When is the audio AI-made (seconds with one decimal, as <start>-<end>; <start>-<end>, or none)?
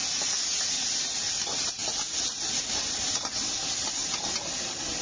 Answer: 1.3-1.8; 2.6-4.0